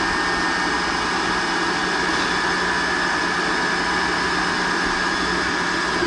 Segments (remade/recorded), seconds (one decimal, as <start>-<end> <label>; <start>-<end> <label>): 0.0-6.1 recorded